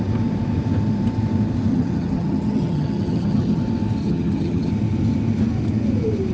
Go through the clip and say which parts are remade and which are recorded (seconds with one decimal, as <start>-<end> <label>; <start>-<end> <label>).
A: 0.0-1.7 recorded; 1.7-3.6 remade; 3.6-4.0 recorded; 4.0-4.7 remade; 4.7-6.3 recorded